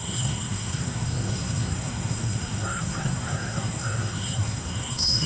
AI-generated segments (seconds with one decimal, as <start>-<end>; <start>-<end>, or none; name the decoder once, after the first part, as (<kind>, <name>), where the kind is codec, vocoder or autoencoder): 0.0-5.3 (codec, SNAC)